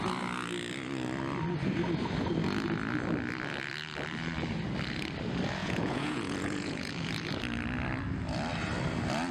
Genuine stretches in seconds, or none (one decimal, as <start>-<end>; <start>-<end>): 0.0-5.6; 6.9-9.3